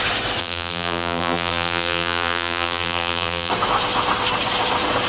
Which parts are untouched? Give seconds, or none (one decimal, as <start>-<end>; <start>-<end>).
0.0-0.4; 3.5-5.1

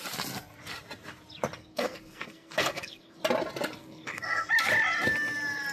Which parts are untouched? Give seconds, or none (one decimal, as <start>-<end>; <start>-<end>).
0.0-1.6; 3.2-3.8; 4.5-5.7

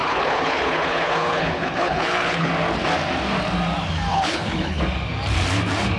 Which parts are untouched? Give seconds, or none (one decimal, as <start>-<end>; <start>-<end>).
2.5-4.1; 4.8-6.0